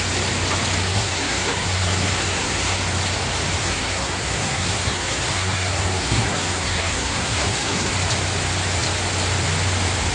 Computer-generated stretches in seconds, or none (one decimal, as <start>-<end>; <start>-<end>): 0.8-2.8; 3.6-7.9